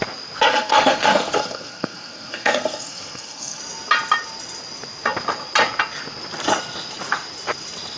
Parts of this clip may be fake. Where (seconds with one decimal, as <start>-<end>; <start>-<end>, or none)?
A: 0.5-3.6